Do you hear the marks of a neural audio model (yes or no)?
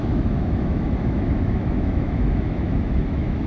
yes